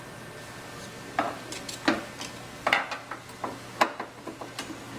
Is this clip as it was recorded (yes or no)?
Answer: yes